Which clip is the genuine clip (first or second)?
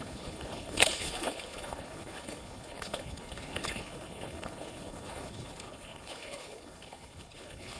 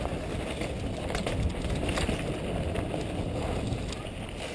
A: second